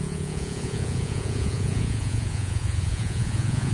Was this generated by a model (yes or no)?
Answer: yes